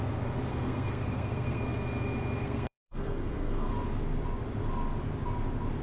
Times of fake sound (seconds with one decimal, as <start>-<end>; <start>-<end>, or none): 0.5-1.6; 2.4-3.7